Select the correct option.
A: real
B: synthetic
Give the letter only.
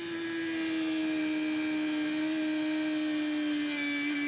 A